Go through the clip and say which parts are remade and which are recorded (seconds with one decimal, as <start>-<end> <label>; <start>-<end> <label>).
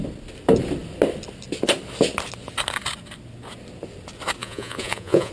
0.0-4.4 recorded; 4.4-5.3 remade